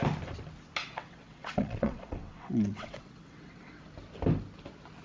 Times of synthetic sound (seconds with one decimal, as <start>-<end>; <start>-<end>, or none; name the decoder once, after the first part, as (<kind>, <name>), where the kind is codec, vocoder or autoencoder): 0.8-3.8 (vocoder, WaveNeXt)